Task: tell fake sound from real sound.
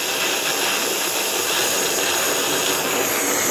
real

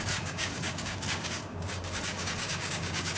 fake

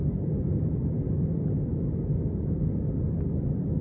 real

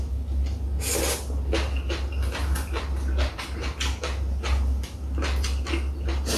real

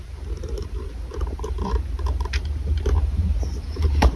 fake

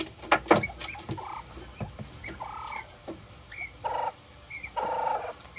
real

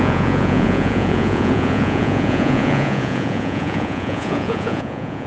fake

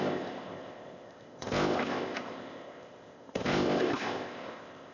fake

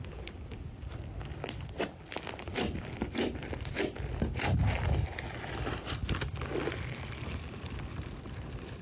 fake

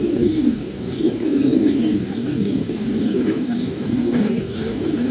fake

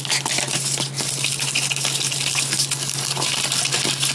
real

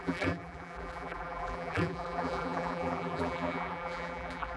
fake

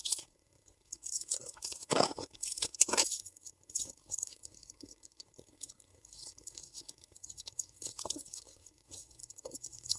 fake